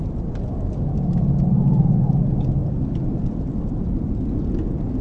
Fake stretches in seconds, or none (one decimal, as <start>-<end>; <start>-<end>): none